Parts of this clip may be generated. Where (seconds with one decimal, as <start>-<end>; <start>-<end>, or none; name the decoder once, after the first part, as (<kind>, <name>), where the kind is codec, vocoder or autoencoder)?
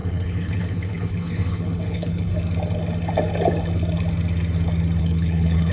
0.0-2.3 (codec, HILCodec); 5.0-5.7